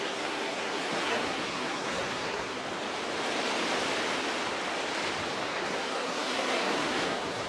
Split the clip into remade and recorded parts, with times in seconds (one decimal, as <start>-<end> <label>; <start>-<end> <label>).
0.0-2.6 remade; 2.6-5.4 recorded; 5.4-7.5 remade